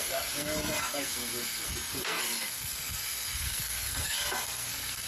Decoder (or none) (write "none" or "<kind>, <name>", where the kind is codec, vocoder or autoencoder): codec, SNAC